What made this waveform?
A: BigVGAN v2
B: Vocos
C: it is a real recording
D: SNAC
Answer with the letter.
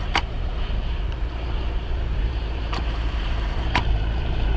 A